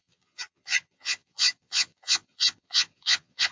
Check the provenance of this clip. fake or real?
fake